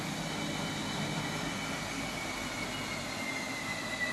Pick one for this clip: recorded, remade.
recorded